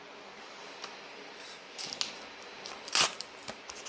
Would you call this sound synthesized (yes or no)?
no